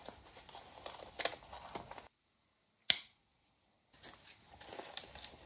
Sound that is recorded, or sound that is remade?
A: recorded